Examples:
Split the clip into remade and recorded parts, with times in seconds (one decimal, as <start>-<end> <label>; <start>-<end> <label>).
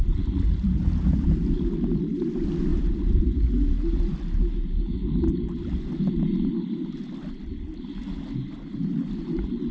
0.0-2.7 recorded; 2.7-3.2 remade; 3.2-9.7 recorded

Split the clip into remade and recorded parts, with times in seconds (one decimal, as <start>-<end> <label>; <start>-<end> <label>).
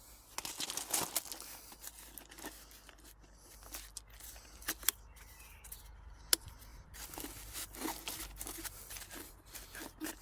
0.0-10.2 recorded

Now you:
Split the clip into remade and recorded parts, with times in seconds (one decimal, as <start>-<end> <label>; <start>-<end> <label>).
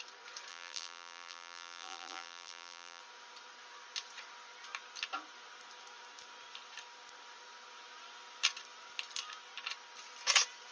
0.0-0.5 recorded; 0.5-3.0 remade; 3.0-10.7 recorded